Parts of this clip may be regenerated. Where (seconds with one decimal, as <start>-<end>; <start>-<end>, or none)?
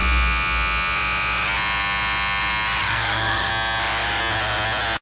2.8-3.5